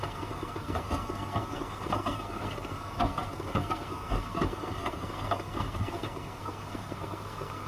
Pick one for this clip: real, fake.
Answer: fake